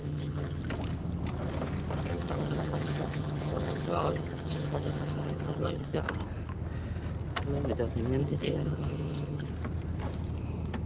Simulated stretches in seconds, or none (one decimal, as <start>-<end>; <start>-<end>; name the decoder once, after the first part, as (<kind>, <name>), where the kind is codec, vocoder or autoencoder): 0.0-0.6 (vocoder, HiFi-GAN); 2.1-6.0; 8.2-9.5